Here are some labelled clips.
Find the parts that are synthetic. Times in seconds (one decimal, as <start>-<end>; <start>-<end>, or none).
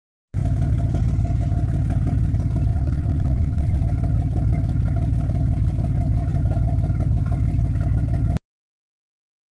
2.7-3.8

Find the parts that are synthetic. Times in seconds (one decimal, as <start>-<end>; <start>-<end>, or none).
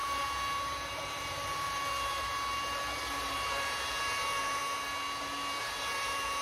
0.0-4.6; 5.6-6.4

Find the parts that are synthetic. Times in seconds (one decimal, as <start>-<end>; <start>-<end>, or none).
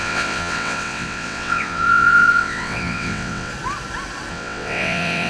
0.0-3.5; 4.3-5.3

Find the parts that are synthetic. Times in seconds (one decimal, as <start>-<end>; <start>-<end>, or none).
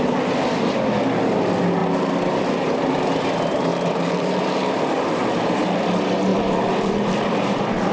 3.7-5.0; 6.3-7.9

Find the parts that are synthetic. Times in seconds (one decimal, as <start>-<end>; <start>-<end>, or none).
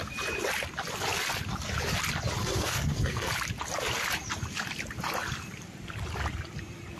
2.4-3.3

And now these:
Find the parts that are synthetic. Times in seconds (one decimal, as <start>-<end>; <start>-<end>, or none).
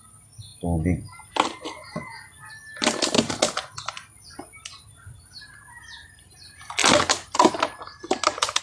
none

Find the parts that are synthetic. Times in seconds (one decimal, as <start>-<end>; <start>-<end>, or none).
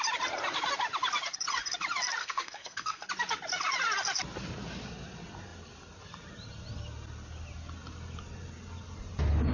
2.2-3.1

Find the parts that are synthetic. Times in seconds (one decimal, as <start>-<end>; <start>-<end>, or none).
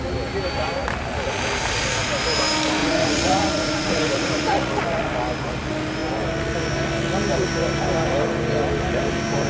2.8-4.7